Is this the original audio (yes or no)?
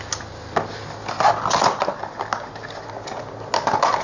yes